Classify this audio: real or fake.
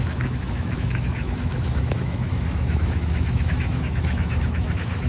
fake